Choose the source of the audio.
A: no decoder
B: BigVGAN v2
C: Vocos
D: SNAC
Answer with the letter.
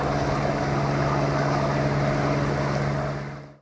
A